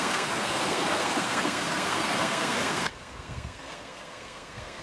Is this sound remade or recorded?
remade